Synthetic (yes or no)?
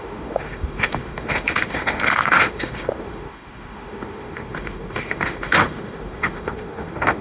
yes